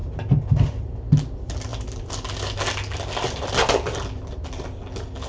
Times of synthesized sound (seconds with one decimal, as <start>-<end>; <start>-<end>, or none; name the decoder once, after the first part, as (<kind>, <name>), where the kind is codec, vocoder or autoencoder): none